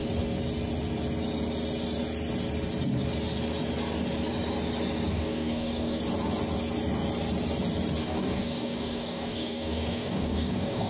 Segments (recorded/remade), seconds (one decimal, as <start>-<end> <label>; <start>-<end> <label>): 0.0-5.1 recorded; 5.1-6.0 remade; 6.0-8.0 recorded; 8.0-10.9 remade